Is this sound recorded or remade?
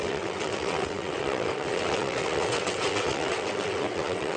remade